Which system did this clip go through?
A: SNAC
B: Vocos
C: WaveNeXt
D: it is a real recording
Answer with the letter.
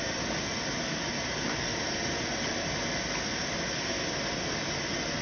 D